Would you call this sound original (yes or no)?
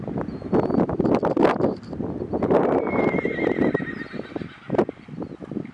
yes